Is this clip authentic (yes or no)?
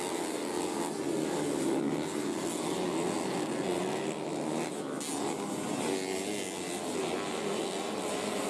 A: yes